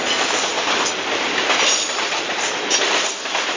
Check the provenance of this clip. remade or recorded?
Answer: recorded